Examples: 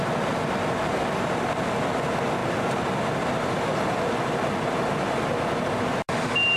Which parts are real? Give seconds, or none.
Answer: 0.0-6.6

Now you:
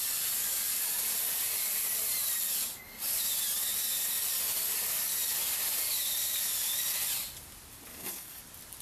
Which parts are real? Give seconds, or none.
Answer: 0.0-7.9; 8.4-8.8

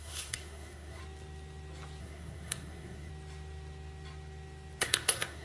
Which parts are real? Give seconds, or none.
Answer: 1.0-2.0; 3.1-4.8

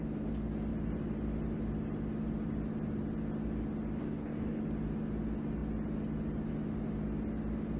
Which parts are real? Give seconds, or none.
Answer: 0.0-4.0; 4.6-7.8

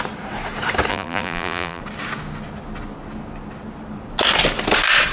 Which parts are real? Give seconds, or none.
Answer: 0.0-0.9; 1.8-5.1

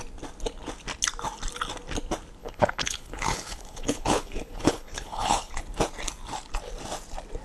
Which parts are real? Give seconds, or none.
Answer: 0.0-2.4; 5.6-7.4